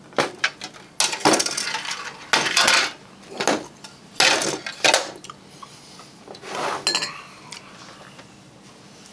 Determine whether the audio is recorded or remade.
recorded